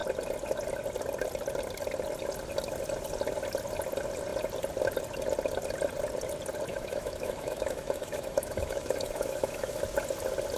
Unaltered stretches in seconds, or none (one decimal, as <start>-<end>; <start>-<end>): 0.0-6.7; 9.8-10.6